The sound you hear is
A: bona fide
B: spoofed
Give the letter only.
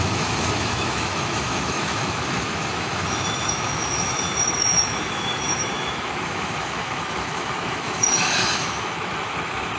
B